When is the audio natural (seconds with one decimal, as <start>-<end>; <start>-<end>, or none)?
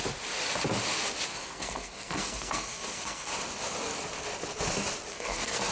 0.0-1.3; 3.3-5.1